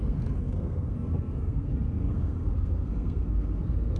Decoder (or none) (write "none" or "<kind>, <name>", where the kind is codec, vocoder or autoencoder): codec, SNAC